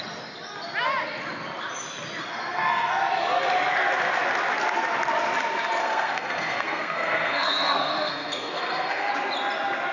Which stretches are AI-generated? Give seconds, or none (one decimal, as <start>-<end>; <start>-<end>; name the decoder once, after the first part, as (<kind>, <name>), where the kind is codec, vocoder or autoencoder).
2.2-2.9 (codec, SNAC); 5.8-9.1